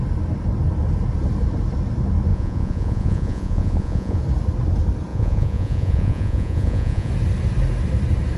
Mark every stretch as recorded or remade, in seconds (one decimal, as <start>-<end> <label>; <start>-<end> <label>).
0.0-2.3 recorded; 2.3-4.2 remade; 4.2-5.1 recorded; 5.1-7.1 remade; 7.1-8.4 recorded